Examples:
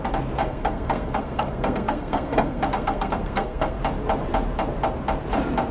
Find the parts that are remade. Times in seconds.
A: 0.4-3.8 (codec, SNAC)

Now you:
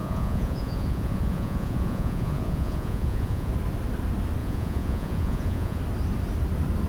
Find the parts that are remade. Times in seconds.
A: 0.0-3.5 (vocoder, Vocos); 4.4-5.8